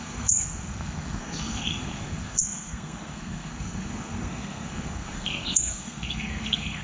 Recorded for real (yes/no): no